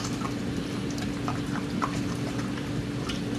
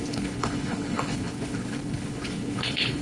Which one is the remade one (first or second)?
second